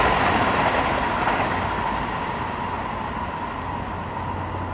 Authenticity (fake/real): real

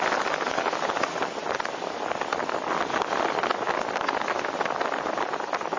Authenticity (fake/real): real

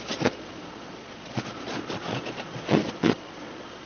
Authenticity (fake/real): fake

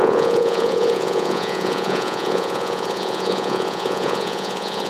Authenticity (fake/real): fake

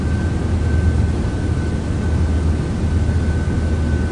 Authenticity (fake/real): real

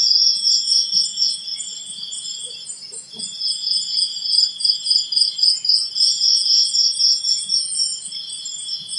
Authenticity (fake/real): fake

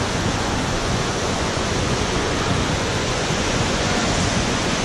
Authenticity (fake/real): fake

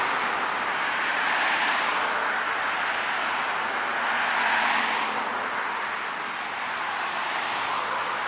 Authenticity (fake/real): real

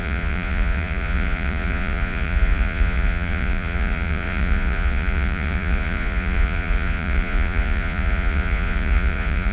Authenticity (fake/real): fake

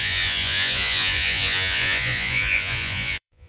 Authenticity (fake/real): fake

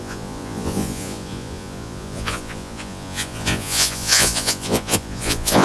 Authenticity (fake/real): fake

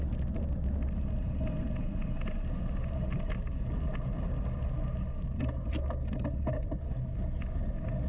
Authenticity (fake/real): real